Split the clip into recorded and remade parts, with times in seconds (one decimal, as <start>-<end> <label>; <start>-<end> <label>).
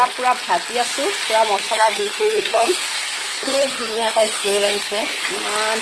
0.0-1.7 recorded; 1.7-5.2 remade; 5.2-5.8 recorded